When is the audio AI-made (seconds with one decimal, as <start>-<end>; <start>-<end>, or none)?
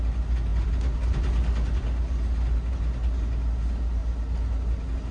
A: none